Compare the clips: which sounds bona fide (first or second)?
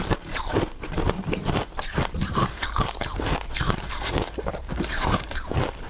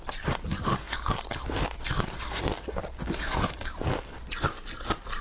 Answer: second